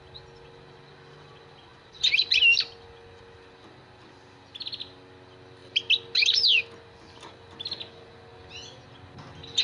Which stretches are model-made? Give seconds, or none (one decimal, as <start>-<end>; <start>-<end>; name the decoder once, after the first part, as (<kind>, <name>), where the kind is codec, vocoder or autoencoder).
5.6-7.3 (vocoder, BigVGAN v2)